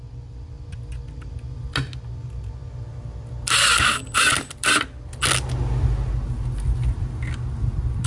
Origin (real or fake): real